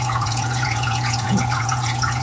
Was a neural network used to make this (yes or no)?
yes